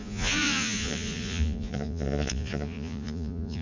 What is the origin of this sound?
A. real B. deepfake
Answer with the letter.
B